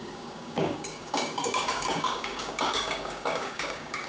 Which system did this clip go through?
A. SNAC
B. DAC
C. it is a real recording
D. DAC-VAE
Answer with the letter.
B